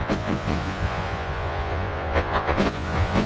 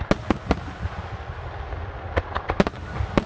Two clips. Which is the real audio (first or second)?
second